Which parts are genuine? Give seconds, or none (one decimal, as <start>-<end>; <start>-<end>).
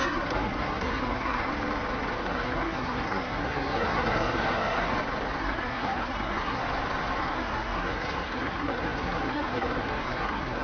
1.5-2.2; 4.9-5.4; 6.6-7.2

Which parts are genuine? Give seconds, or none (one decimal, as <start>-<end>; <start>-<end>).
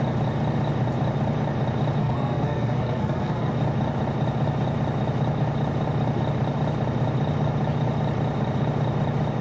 0.0-2.0; 3.5-9.4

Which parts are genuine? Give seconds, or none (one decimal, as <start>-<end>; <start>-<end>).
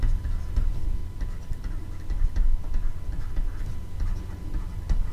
0.0-1.0; 3.6-5.1